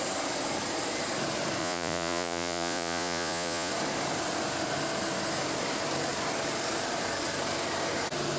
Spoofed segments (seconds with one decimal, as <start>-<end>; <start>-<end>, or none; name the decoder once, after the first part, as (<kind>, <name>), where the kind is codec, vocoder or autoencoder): 1.6-3.7 (vocoder, Vocos)